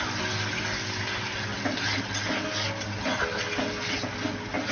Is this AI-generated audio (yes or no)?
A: no